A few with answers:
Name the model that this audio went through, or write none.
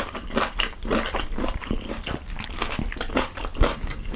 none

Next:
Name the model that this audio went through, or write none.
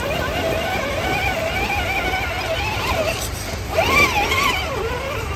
none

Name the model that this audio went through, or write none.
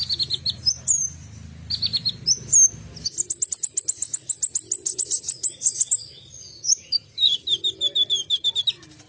none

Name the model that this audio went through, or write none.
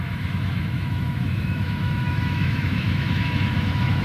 autoencoder, DAC-VAE